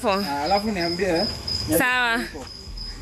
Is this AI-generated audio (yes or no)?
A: yes